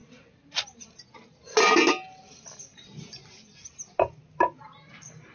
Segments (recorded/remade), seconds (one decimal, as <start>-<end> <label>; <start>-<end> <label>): 0.0-5.3 recorded